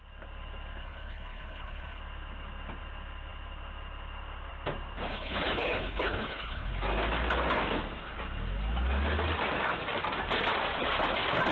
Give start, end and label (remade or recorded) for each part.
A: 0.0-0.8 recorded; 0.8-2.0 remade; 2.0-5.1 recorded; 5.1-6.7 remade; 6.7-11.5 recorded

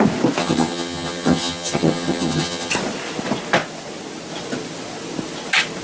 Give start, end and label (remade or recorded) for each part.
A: 0.0-0.4 recorded; 0.4-2.7 remade; 2.7-5.8 recorded

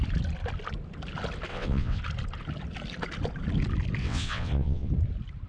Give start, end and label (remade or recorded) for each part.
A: 0.0-1.5 recorded; 1.5-2.0 remade; 2.0-4.0 recorded; 4.0-4.9 remade; 4.9-5.5 recorded

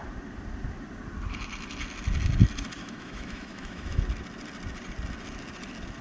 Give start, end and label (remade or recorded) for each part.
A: 0.0-2.8 recorded; 2.8-4.0 remade; 4.0-6.0 recorded

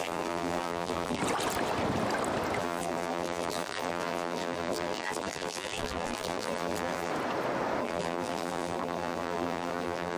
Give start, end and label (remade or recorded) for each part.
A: 0.0-1.2 remade; 1.2-2.6 recorded; 2.6-7.1 remade; 7.1-7.8 recorded; 7.8-10.2 remade

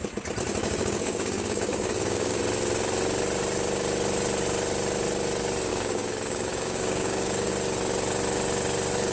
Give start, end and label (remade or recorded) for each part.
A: 0.0-0.6 recorded; 0.6-2.4 remade; 2.4-5.7 recorded; 5.7-7.5 remade; 7.5-9.1 recorded